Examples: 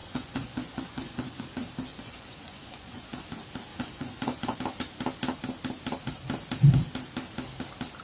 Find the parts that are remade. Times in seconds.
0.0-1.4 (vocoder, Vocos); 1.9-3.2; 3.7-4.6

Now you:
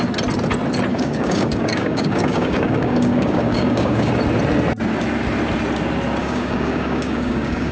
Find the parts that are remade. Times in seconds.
0.9-4.1 (codec, DAC); 6.2-7.7

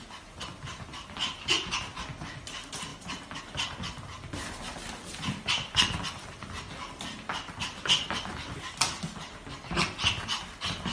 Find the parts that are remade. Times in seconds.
2.9-3.4 (vocoder, BigVGAN v2); 5.0-6.6